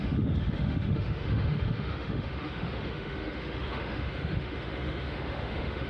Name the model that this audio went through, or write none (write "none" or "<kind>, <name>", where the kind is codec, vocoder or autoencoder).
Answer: autoencoder, DAC-VAE